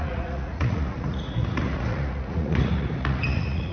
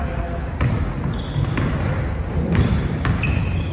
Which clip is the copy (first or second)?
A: first